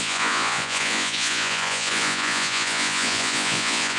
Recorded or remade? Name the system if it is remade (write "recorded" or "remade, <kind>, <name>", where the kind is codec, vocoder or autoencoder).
remade, vocoder, Vocos